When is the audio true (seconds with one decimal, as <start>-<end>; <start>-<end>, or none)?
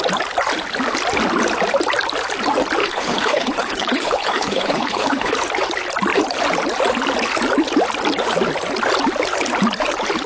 0.0-2.8; 5.3-10.3